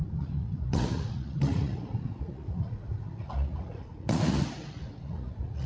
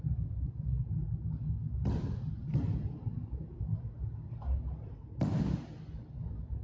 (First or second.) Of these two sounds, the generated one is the first